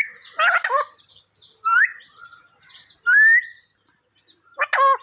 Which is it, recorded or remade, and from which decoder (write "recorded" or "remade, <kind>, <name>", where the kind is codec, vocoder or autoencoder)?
recorded